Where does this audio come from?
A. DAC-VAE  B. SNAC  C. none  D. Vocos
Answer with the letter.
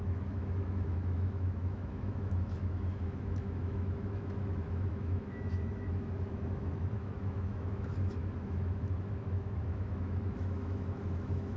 A